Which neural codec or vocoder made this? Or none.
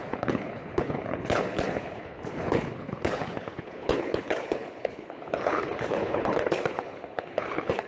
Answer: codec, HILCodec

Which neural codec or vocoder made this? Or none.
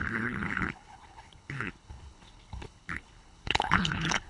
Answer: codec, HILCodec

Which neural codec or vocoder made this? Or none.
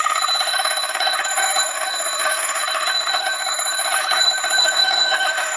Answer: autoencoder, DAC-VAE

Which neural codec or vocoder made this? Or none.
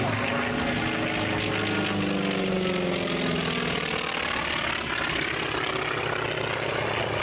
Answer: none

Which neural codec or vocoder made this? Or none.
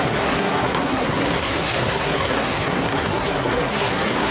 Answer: codec, SNAC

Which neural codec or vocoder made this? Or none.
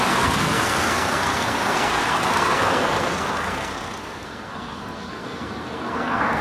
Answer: codec, SNAC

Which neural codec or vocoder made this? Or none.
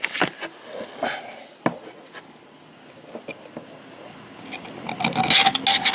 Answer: none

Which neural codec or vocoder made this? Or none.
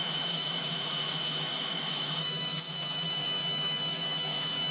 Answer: autoencoder, DAC-VAE